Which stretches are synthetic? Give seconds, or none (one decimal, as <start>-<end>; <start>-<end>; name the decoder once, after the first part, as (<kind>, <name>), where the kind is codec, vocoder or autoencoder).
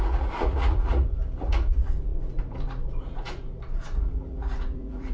0.0-5.1 (vocoder, Vocos)